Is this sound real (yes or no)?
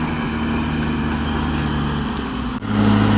yes